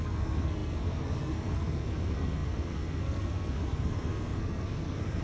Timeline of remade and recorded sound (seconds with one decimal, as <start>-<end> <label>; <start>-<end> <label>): 0.0-5.2 remade